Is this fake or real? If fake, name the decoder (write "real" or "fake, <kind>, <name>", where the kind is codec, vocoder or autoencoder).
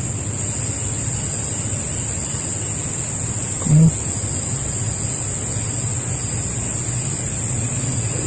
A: real